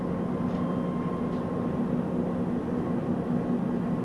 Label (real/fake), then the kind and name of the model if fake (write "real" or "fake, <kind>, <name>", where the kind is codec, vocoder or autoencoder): real